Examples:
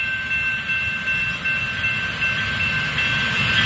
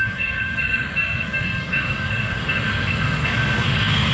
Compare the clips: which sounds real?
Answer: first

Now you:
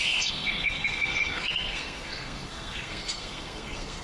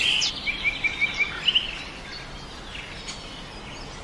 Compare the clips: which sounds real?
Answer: second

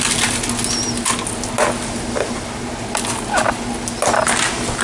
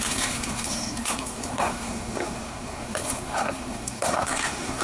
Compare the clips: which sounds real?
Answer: first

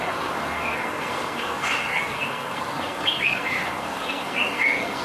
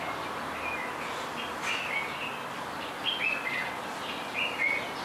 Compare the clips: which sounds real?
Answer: second